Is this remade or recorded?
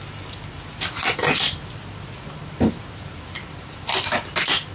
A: recorded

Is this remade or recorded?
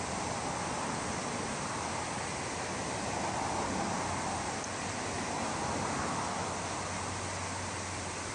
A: recorded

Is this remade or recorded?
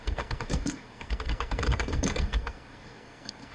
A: remade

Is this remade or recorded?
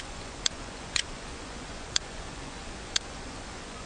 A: remade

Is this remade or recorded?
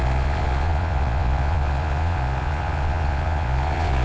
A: remade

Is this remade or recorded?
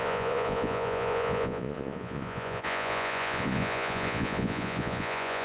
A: remade